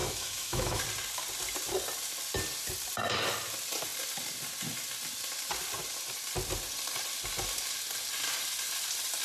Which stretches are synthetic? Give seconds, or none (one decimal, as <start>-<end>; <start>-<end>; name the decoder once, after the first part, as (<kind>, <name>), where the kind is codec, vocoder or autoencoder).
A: 0.0-0.8 (autoencoder, DAC-VAE)